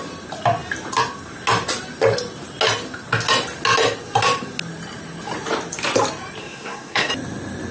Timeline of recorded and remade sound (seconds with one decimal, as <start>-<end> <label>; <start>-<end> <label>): 0.0-6.4 recorded; 6.4-7.1 remade; 7.1-7.7 recorded

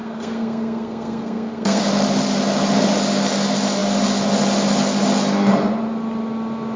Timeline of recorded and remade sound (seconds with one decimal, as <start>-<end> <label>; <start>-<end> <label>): 0.0-1.8 remade; 1.8-6.8 recorded

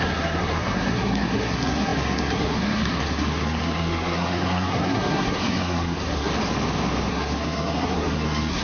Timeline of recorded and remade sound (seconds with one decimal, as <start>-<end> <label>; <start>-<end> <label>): 0.0-6.3 remade; 6.3-7.1 recorded; 7.1-8.6 remade